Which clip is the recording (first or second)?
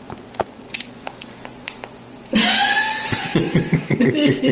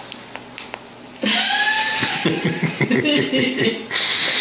second